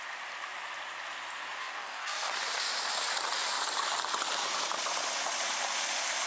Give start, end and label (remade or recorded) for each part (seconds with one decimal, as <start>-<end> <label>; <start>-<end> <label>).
0.0-1.6 recorded; 1.6-2.3 remade; 2.3-6.3 recorded